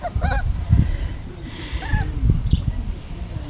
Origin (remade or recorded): recorded